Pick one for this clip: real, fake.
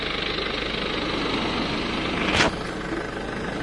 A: real